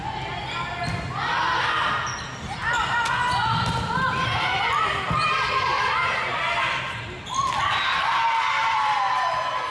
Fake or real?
real